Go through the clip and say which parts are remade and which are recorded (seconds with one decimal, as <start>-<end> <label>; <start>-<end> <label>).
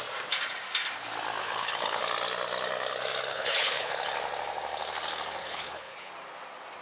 0.0-1.4 recorded; 1.4-2.0 remade; 2.0-3.3 recorded; 3.3-3.9 remade; 3.9-5.4 recorded; 5.4-6.1 remade; 6.1-6.8 recorded